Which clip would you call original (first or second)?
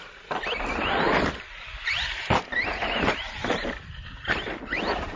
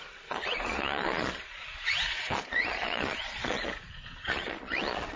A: first